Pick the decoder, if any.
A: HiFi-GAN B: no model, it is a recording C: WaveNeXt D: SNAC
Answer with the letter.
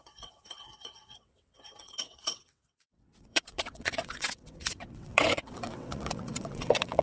C